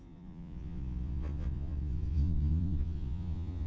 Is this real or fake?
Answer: fake